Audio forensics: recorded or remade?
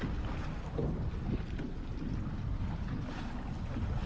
recorded